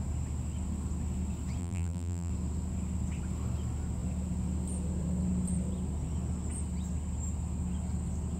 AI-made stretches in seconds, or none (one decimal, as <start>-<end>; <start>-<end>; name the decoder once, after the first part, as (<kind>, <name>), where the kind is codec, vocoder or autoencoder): 1.6-2.3 (vocoder, BigVGAN v2)